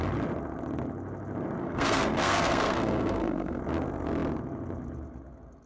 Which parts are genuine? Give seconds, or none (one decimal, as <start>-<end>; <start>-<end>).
0.0-1.6; 3.6-5.7

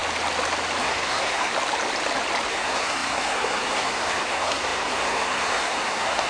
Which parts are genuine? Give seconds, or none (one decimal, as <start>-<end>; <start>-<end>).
0.0-0.8; 1.5-2.5

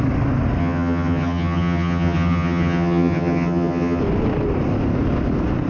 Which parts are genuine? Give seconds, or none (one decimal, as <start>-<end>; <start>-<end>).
0.0-0.6; 4.0-5.7

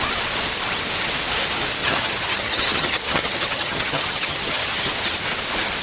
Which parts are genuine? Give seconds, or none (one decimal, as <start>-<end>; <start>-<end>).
0.0-1.8; 4.9-5.8

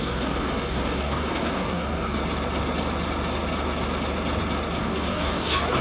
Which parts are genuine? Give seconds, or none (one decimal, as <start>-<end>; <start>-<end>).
2.2-4.8